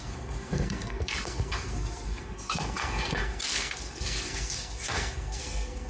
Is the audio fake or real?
fake